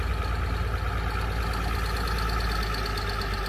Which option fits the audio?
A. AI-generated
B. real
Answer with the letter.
B